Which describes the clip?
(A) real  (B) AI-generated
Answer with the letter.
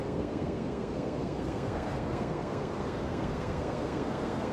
B